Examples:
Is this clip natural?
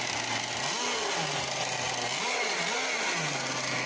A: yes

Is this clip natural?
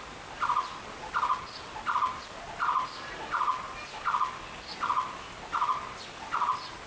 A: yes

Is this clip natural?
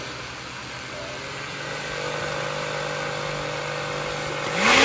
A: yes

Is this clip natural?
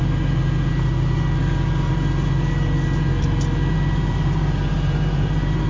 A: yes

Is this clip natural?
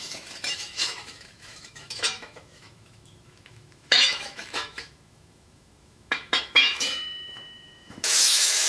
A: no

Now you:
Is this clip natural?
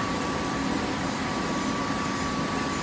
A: no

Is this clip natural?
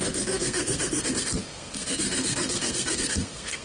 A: no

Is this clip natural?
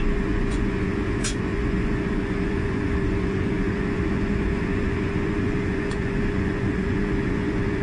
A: no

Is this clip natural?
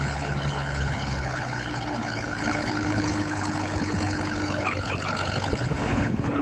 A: no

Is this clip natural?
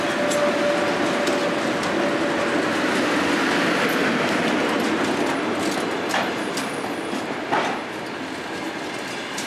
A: yes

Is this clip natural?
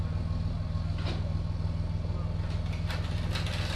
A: yes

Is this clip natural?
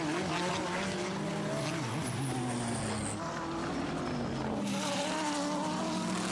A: yes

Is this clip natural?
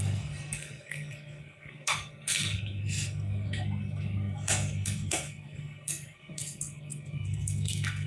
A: no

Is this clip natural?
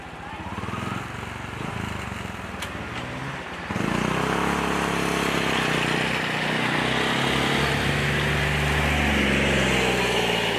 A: yes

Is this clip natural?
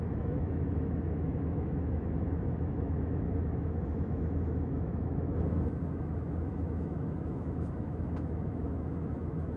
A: no